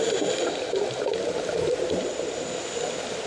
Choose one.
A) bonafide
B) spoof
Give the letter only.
A